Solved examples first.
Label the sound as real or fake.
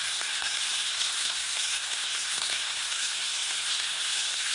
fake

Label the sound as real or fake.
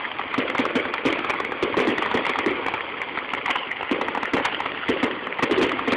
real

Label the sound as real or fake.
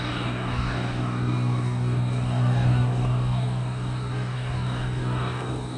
fake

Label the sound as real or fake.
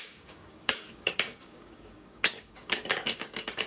fake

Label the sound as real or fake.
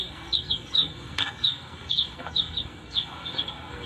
fake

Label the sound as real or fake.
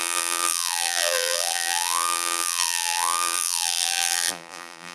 fake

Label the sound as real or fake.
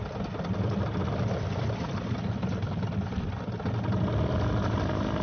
real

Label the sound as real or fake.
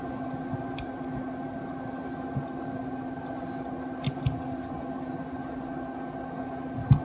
real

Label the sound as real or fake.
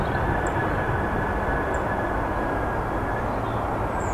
real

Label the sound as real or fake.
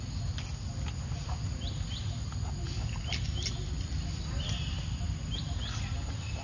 real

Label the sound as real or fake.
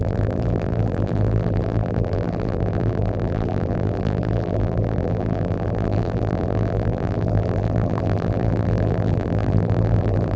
fake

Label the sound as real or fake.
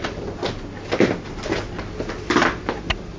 real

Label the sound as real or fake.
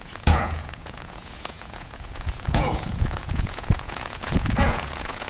fake